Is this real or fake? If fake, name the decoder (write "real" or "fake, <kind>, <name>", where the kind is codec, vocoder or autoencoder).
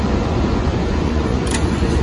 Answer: fake, vocoder, Vocos